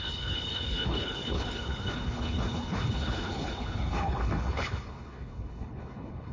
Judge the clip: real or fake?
fake